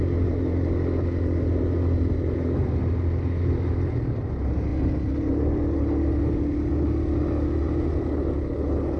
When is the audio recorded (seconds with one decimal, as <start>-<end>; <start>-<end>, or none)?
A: 0.0-9.0